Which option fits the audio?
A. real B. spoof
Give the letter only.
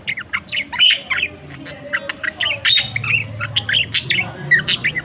A